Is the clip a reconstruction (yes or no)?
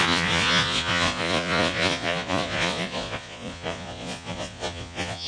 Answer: yes